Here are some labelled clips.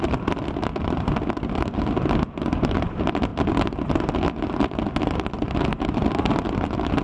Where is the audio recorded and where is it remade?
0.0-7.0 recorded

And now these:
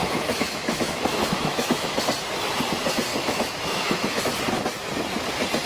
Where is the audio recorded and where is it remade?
0.0-2.0 remade; 2.0-3.1 recorded; 3.1-4.2 remade; 4.2-5.7 recorded

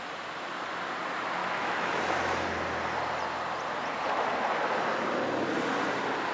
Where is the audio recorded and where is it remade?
0.0-1.4 recorded; 1.4-2.0 remade; 2.0-6.3 recorded

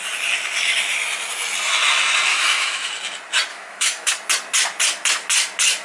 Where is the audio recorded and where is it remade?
0.0-2.3 recorded; 2.3-2.9 remade; 2.9-3.5 recorded; 3.5-4.1 remade; 4.1-5.8 recorded

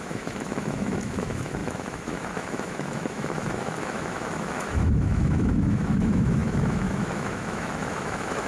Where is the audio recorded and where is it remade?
0.0-8.5 remade

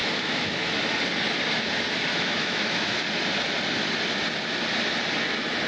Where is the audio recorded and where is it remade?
0.0-0.7 remade; 0.7-2.1 recorded; 2.1-3.0 remade; 3.0-5.7 recorded